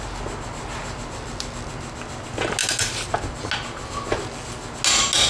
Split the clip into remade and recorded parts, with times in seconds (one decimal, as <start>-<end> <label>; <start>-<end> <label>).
0.0-5.3 recorded